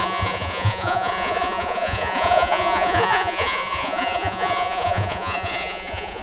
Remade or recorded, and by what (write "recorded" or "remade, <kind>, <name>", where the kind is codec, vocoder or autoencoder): remade, vocoder, Vocos